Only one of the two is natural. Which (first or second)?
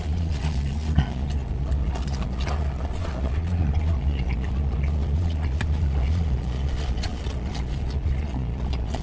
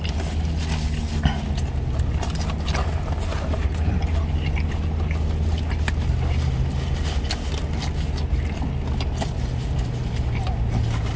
second